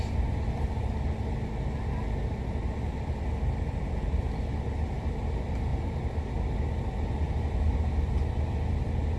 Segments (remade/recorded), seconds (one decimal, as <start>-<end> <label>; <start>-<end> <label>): 0.0-9.2 recorded